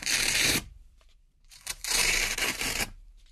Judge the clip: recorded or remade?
remade